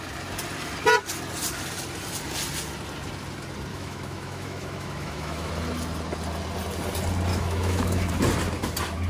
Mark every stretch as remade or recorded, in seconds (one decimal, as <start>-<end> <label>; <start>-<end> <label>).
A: 0.0-3.7 recorded; 3.7-5.5 remade; 5.5-7.3 recorded; 7.3-8.1 remade; 8.1-9.1 recorded